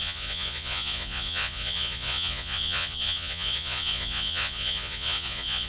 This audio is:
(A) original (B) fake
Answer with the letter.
B